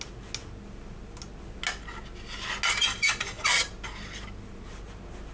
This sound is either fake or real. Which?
real